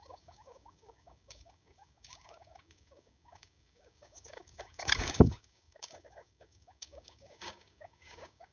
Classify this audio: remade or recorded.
remade